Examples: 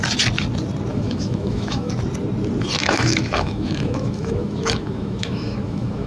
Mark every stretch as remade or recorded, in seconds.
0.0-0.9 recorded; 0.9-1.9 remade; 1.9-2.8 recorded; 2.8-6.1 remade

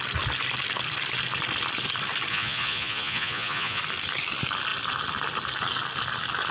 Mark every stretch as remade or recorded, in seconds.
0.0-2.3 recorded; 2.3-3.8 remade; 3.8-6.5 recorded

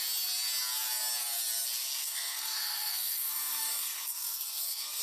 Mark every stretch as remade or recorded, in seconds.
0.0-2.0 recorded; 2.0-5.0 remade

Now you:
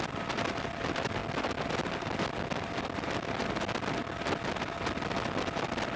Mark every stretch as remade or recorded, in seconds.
0.0-6.0 recorded

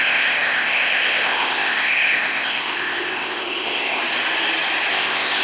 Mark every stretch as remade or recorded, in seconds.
0.0-4.0 remade; 4.0-4.9 recorded; 4.9-5.4 remade

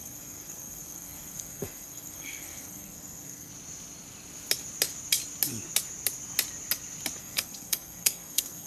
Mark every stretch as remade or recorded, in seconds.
0.0-3.5 remade; 3.5-7.2 recorded; 7.2-8.7 remade

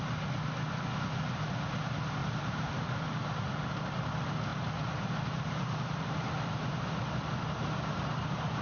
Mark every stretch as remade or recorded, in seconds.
0.0-2.2 recorded; 2.2-4.1 remade; 4.1-4.5 recorded; 4.5-7.1 remade; 7.1-8.6 recorded

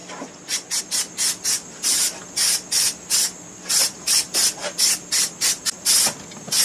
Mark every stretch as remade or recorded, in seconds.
0.0-6.6 recorded